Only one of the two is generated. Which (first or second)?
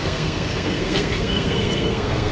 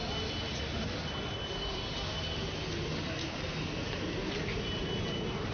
first